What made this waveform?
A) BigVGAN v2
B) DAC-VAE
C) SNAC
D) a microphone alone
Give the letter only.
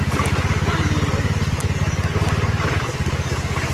D